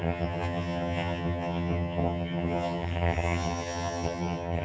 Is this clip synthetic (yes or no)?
yes